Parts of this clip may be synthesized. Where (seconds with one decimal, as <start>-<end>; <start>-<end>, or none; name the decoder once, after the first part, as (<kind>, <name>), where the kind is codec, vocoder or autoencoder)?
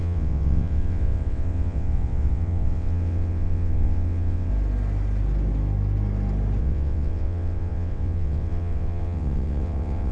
0.0-4.5 (vocoder, WaveNeXt); 6.6-10.1